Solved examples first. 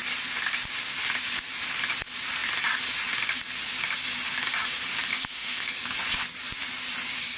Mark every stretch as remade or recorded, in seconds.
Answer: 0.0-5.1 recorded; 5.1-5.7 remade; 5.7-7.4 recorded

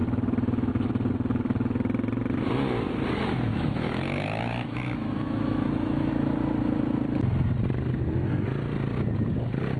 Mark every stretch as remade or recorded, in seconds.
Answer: 0.0-3.5 recorded; 3.5-6.1 remade; 6.1-9.8 recorded

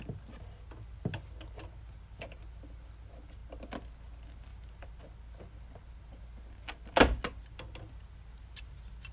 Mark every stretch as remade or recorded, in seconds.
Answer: 0.0-9.1 recorded

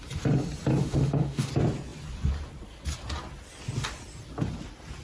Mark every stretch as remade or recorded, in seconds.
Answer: 0.0-0.8 recorded; 0.8-1.5 remade; 1.5-5.0 recorded